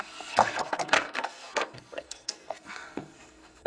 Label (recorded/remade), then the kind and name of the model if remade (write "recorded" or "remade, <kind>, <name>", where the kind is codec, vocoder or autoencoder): remade, codec, SNAC